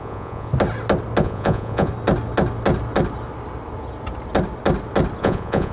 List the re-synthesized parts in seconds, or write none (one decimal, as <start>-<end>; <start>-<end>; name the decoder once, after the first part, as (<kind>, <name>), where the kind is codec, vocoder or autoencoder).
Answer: 0.0-0.5 (vocoder, Vocos); 1.2-1.9; 5.2-5.7